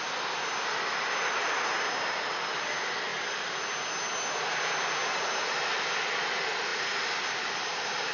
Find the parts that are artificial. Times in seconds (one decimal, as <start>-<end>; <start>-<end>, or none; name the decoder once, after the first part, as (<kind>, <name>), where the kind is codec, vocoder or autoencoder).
none